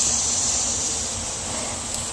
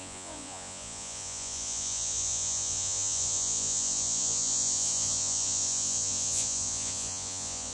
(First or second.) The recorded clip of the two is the first